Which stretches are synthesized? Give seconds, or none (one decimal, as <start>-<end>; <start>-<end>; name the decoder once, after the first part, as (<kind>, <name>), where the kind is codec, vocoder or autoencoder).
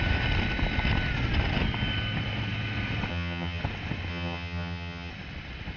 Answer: 3.1-3.6 (vocoder, HiFi-GAN); 4.1-5.1